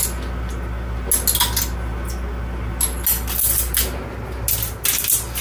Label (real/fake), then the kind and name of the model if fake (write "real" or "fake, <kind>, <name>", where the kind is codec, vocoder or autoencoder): real